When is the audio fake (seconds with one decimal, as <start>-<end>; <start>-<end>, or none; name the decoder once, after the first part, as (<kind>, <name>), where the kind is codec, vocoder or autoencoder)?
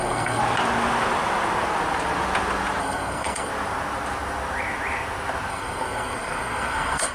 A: 0.0-0.4 (codec, SNAC); 2.8-3.5; 5.5-7.1